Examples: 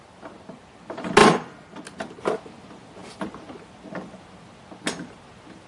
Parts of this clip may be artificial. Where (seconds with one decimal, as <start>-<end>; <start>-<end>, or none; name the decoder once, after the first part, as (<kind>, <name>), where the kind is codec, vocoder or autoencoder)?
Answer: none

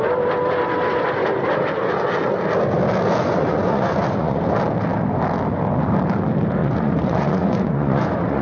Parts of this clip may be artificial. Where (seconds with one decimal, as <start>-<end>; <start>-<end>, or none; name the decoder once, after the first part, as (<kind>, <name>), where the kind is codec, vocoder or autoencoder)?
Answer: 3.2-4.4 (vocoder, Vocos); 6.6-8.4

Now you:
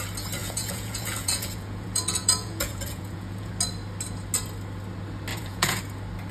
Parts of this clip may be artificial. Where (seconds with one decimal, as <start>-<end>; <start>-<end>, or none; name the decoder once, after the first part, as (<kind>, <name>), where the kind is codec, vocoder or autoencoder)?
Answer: 0.4-3.5 (vocoder, Vocos); 5.3-5.8

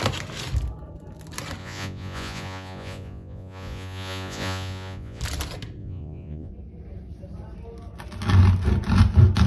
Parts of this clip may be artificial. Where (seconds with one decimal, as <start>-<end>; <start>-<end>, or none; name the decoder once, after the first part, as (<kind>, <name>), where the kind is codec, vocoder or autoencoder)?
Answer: 1.6-5.2 (vocoder, Vocos); 5.8-6.5